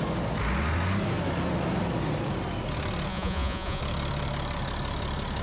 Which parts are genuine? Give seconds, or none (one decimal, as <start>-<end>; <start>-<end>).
0.0-3.1; 3.8-5.4